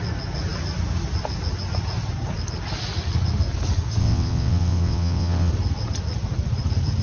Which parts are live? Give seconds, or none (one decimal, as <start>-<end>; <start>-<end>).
0.0-4.0; 5.5-7.0